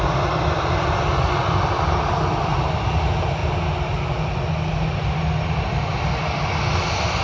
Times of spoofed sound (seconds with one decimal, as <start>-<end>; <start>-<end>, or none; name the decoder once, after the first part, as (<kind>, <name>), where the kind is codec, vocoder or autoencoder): none